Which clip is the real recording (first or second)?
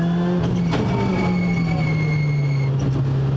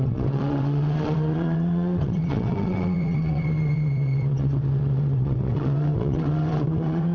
first